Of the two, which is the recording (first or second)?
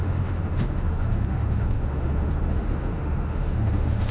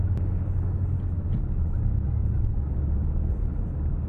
second